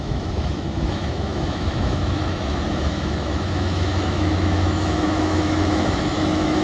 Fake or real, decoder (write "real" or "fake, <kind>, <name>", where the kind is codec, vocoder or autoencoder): fake, autoencoder, DAC-VAE